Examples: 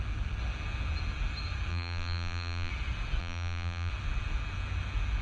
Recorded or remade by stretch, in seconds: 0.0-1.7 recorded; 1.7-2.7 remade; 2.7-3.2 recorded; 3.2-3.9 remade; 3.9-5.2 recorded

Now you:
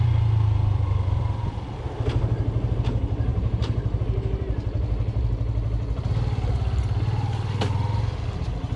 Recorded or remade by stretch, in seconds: 0.0-3.3 recorded; 3.3-4.0 remade; 4.0-8.8 recorded

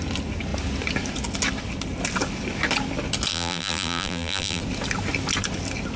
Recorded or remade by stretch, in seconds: 0.0-3.3 recorded; 3.3-4.6 remade; 4.6-6.0 recorded